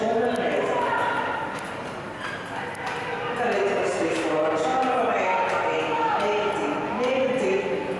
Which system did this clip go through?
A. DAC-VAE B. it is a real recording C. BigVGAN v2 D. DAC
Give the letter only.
B